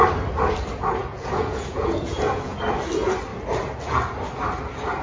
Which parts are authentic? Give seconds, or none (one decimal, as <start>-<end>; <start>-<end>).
0.0-1.0; 2.6-5.0